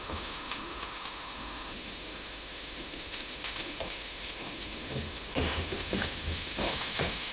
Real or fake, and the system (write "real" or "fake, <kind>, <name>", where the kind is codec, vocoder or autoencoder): fake, autoencoder, DAC-VAE